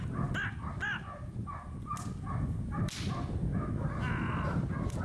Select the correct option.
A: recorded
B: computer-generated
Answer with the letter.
A